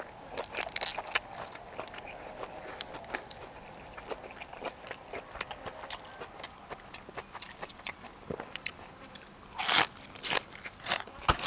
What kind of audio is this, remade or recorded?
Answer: recorded